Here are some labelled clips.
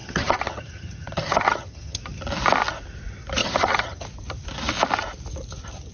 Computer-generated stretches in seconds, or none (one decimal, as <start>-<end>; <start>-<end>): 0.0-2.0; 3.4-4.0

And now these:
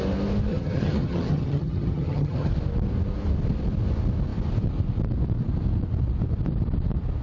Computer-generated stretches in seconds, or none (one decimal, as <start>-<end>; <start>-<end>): 0.5-2.5

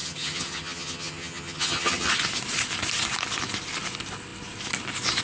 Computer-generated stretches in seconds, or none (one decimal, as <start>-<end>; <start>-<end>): 0.0-2.1